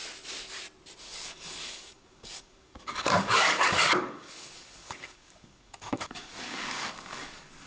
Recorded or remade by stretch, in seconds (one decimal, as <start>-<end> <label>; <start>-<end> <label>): 0.0-1.0 recorded; 1.0-7.7 remade